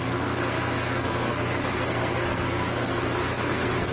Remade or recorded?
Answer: remade